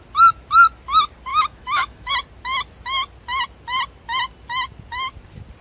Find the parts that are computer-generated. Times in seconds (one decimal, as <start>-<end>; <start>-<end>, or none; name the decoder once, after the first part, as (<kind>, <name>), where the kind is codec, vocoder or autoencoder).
1.3-2.1 (autoencoder, DAC-VAE)